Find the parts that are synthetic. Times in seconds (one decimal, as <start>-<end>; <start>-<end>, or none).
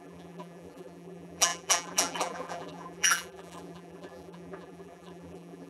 0.0-5.7